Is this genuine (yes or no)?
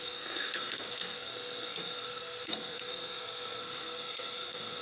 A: no